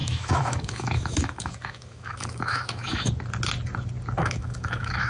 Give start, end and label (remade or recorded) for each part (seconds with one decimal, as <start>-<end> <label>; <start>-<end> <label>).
0.0-3.1 remade; 3.1-4.2 recorded; 4.2-5.1 remade